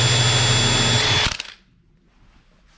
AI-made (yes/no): no